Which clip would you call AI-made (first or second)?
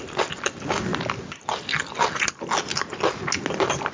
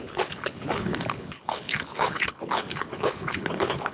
second